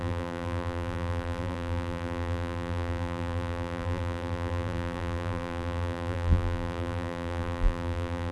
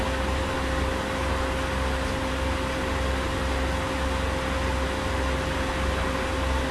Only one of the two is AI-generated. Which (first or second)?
first